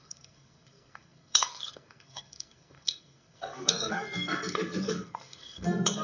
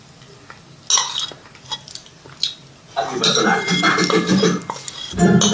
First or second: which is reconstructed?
first